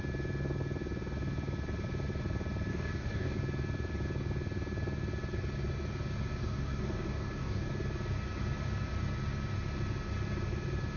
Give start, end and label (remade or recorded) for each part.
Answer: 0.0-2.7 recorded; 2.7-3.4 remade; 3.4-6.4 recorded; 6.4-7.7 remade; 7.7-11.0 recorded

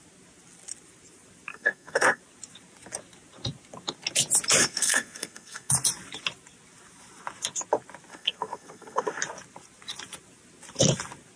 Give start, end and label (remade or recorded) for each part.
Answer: 0.0-1.5 recorded; 1.5-2.2 remade; 2.2-4.6 recorded; 4.6-5.7 remade; 5.7-8.1 recorded; 8.1-9.2 remade; 9.2-11.4 recorded

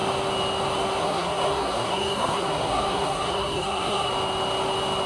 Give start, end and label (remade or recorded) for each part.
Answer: 0.0-1.0 recorded; 1.0-4.1 remade; 4.1-5.1 recorded

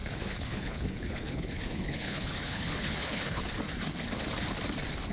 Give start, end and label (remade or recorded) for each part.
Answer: 0.0-3.4 remade; 3.4-5.1 recorded

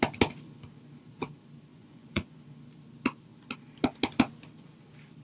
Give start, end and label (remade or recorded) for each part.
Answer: 0.0-1.7 recorded; 1.7-2.4 remade; 2.4-5.2 recorded

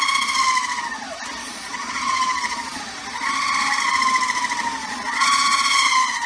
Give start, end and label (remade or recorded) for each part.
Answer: 0.0-1.4 recorded; 1.4-2.8 remade; 2.8-4.8 recorded; 4.8-6.3 remade